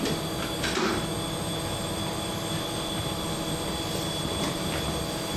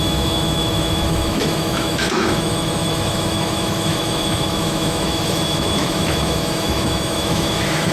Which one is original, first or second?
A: first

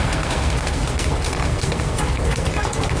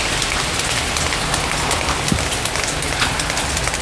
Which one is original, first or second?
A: second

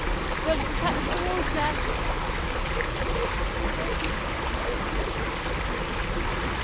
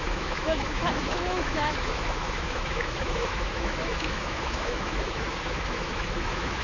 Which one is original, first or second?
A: first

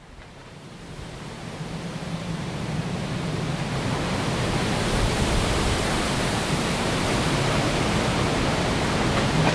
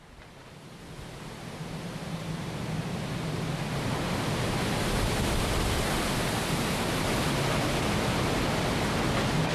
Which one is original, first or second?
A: second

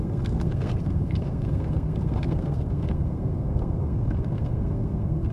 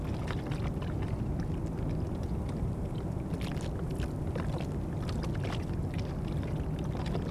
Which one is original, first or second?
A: second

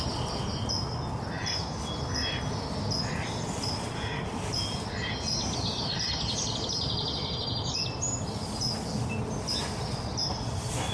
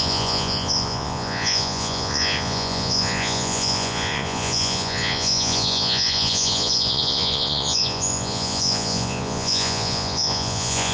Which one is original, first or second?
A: first